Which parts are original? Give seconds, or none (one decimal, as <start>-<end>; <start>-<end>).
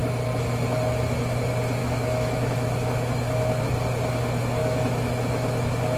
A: 0.0-1.8; 3.6-4.6